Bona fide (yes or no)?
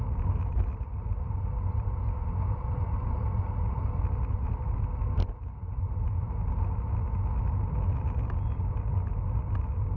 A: yes